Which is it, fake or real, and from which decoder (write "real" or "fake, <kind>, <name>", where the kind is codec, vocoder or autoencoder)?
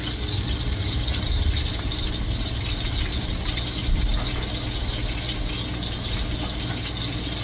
real